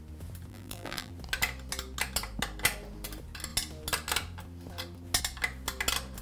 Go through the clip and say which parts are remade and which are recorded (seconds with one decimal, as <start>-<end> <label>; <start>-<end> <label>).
0.0-0.5 recorded; 0.5-1.1 remade; 1.1-6.2 recorded